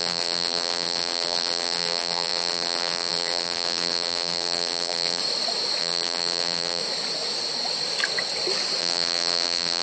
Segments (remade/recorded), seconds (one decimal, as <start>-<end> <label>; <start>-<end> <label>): 0.0-5.2 remade; 5.2-5.8 recorded; 5.8-6.8 remade; 6.8-8.8 recorded; 8.8-9.8 remade